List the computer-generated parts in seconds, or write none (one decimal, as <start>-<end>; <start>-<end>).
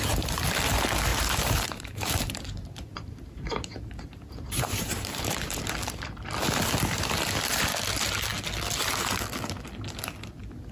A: 1.1-5.6